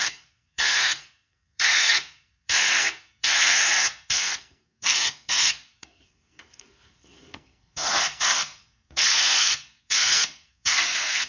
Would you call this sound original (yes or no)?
no